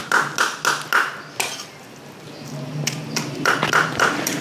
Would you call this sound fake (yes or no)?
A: no